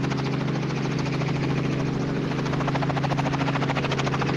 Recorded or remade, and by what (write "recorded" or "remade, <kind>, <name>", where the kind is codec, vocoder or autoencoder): recorded